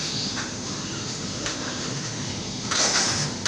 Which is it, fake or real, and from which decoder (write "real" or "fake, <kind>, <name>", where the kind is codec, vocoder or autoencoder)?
fake, autoencoder, DAC-VAE